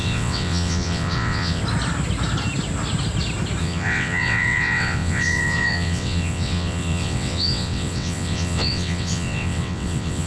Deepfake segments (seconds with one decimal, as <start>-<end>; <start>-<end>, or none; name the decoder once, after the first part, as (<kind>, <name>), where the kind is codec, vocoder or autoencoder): 0.0-1.6 (vocoder, WaveNeXt); 3.6-10.3